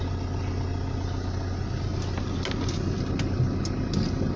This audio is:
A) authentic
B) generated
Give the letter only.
A